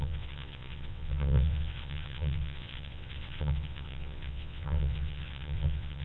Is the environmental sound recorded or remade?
remade